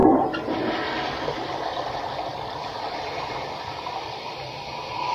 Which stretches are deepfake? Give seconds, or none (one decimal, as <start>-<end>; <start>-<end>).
2.3-5.1